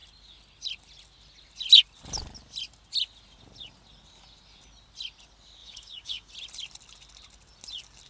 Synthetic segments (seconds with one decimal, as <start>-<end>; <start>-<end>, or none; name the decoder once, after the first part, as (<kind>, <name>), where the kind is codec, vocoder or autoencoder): 5.6-6.3 (codec, DAC)